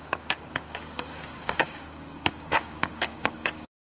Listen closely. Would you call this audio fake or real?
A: fake